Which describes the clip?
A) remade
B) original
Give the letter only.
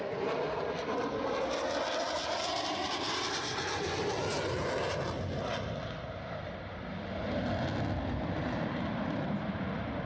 B